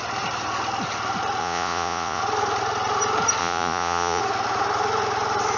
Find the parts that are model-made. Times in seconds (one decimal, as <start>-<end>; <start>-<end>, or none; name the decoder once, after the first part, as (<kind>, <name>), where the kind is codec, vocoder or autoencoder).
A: 1.4-2.2 (vocoder, Vocos); 3.4-4.2

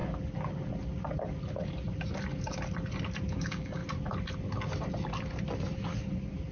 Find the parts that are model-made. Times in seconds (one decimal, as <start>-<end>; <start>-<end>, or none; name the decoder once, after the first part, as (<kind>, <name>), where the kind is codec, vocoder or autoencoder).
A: 3.3-3.8 (codec, DAC)

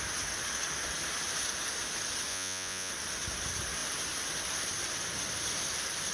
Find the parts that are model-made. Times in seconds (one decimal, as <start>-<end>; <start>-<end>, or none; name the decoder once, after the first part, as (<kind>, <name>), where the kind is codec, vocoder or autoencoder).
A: 2.3-2.9 (vocoder, Vocos)

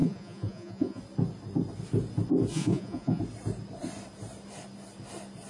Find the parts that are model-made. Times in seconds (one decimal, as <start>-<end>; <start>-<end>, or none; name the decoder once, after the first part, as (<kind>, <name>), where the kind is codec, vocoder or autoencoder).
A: 0.0-1.0 (vocoder, Vocos); 2.5-3.2

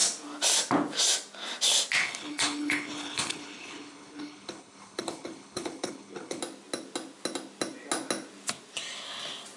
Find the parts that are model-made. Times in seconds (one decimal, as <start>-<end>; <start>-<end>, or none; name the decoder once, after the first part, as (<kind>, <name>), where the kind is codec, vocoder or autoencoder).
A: 2.0-6.4 (codec, HILCodec)

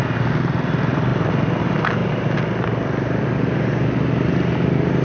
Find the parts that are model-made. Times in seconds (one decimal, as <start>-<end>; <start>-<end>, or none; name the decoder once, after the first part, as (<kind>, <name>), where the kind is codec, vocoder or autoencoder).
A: none

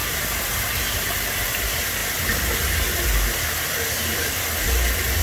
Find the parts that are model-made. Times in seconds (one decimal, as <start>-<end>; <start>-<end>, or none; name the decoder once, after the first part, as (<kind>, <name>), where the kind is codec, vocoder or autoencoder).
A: 0.0-2.0 (vocoder, BigVGAN v2)

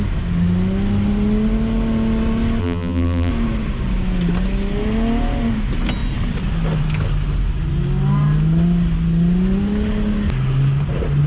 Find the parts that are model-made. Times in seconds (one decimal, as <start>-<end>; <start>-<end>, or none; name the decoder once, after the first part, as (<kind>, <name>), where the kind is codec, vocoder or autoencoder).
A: 2.6-3.3 (vocoder, BigVGAN v2)